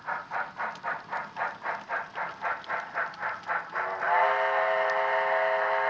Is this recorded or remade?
recorded